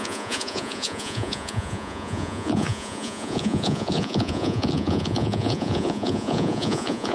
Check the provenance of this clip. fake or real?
fake